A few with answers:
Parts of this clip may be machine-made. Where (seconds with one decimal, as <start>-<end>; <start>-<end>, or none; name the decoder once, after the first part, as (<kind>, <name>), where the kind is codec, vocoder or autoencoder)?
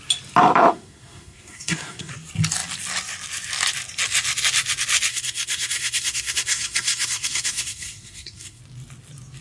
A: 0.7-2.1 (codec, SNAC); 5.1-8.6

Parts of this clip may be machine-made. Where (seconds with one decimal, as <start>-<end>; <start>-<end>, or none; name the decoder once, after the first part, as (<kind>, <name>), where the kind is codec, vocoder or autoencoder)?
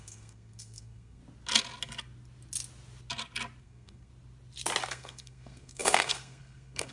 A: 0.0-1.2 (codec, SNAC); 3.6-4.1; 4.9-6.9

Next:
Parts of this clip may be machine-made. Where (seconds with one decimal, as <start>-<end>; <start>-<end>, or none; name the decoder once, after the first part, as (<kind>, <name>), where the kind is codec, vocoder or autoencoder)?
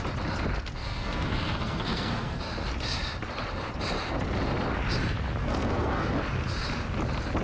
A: 0.8-2.4 (codec, SNAC); 5.4-6.1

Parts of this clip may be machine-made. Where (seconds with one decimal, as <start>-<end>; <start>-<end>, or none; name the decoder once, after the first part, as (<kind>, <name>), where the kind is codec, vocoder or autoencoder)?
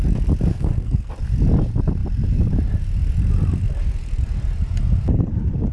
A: 0.5-1.1 (codec, SNAC)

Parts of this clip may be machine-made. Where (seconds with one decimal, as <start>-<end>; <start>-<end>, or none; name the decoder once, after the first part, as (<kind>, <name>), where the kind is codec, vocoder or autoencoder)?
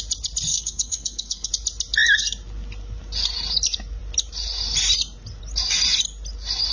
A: 0.5-1.5 (codec, SNAC)